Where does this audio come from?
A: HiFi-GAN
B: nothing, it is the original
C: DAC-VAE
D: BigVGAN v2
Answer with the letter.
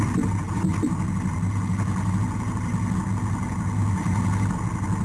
B